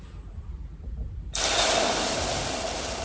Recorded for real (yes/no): yes